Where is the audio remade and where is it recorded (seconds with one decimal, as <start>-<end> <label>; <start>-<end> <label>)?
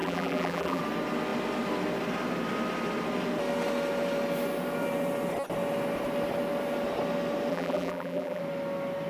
0.0-0.8 remade; 0.8-7.5 recorded; 7.5-8.4 remade; 8.4-9.1 recorded